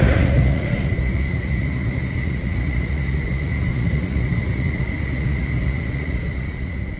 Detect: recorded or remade remade